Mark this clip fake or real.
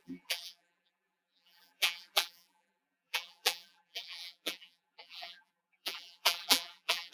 fake